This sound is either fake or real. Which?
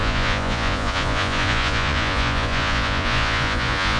fake